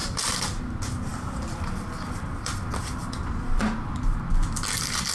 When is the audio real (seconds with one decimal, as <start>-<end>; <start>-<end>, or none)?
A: 0.6-1.1; 2.6-3.0; 4.1-5.1